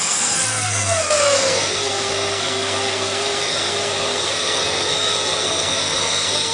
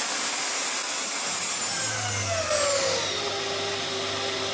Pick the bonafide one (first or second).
second